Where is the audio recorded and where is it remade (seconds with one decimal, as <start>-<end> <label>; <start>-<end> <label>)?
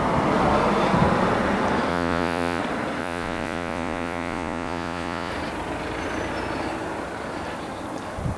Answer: 0.0-1.9 recorded; 1.9-2.6 remade; 2.6-3.0 recorded; 3.0-5.3 remade; 5.3-8.4 recorded